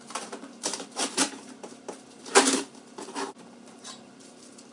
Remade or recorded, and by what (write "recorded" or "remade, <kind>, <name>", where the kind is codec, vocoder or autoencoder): remade, vocoder, BigVGAN v2